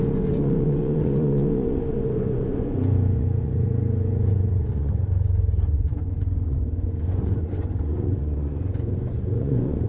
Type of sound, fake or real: fake